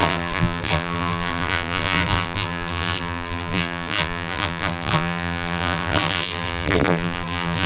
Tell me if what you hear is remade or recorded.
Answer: remade